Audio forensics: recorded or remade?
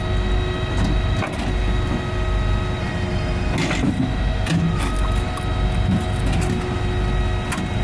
recorded